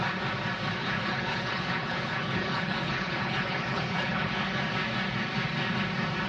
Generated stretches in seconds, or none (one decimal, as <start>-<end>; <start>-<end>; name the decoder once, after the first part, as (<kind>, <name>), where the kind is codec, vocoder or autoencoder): 0.8-4.6 (codec, HILCodec)